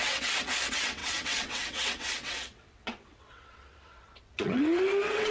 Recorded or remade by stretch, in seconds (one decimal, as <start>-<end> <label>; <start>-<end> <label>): 0.0-5.3 remade